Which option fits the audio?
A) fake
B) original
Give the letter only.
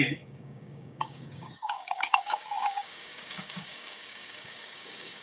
A